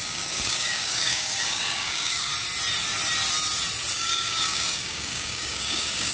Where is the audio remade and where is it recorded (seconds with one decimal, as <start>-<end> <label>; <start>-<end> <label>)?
0.0-2.3 remade; 2.3-3.9 recorded; 3.9-6.1 remade